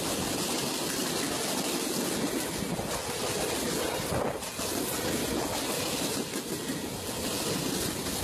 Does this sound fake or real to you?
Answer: real